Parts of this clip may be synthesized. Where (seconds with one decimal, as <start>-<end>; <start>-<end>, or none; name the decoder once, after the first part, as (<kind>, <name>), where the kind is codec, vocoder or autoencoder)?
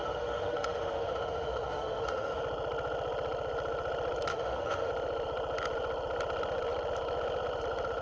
0.0-2.4 (autoencoder, DAC-VAE); 4.3-4.9